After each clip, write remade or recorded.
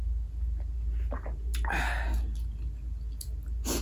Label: recorded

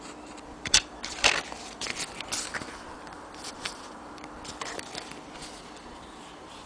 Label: remade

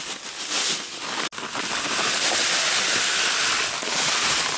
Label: recorded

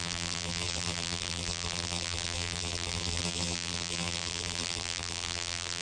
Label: remade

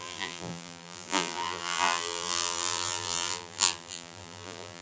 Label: remade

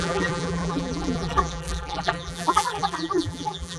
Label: remade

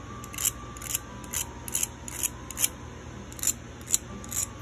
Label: recorded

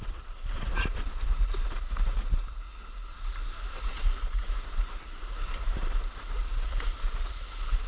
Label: remade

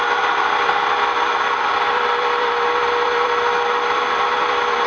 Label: remade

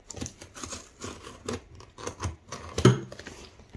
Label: remade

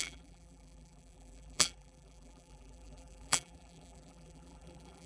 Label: remade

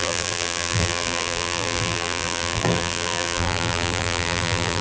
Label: remade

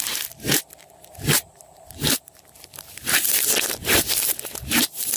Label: remade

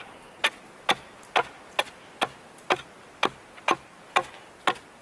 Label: recorded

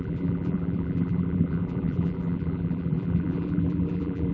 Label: remade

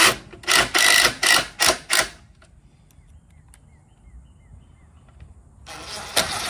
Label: recorded